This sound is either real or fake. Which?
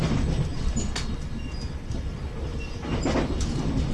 real